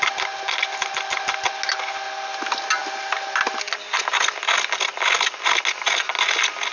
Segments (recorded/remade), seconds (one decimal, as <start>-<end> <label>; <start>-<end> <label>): 0.0-6.7 recorded